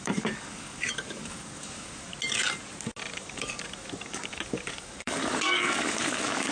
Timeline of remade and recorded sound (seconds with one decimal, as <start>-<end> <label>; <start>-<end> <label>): 0.0-2.1 remade; 2.1-3.1 recorded; 3.1-6.5 remade